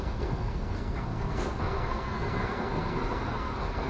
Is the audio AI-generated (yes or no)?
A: yes